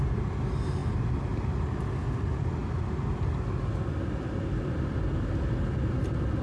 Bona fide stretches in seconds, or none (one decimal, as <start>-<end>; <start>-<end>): 0.0-6.4